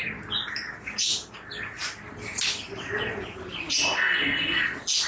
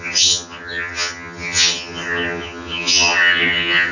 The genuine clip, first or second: first